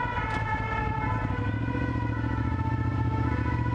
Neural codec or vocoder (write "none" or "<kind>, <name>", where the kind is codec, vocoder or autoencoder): none